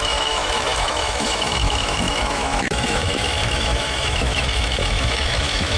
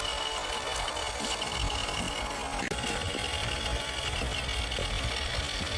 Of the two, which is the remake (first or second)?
first